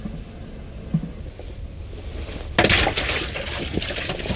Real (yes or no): yes